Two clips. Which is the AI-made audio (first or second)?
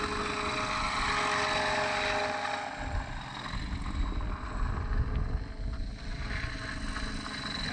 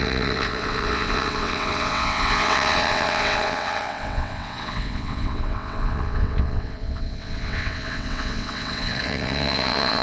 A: second